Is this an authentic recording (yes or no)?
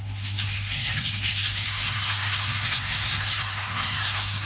no